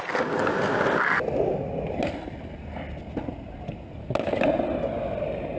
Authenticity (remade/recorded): recorded